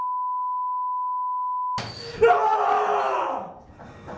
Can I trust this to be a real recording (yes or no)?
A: yes